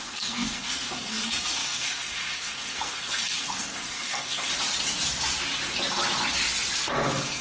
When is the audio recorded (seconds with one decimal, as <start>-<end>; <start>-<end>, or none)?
4.5-6.9